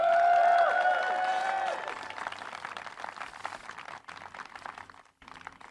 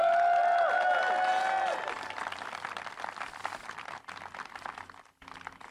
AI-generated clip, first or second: first